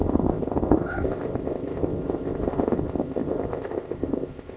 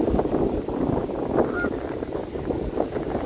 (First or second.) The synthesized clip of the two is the first